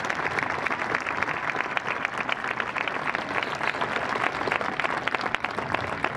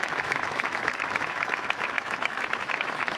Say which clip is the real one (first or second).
first